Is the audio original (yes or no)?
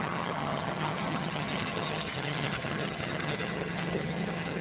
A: no